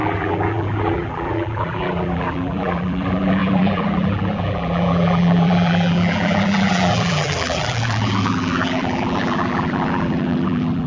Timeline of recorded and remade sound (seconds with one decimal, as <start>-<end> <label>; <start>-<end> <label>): 0.0-10.9 remade